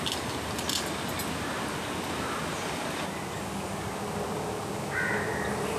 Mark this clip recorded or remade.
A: recorded